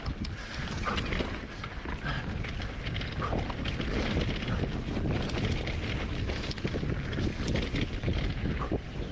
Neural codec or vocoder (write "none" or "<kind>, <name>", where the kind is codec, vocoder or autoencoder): none